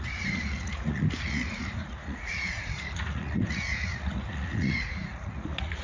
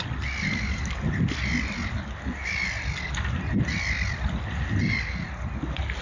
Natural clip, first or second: second